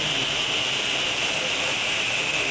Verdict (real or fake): real